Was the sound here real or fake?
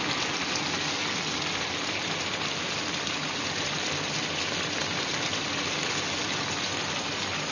real